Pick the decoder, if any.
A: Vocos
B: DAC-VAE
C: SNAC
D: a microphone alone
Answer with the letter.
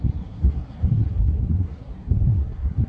C